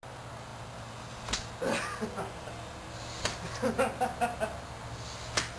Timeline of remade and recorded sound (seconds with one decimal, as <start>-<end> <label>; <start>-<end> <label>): 0.0-5.6 recorded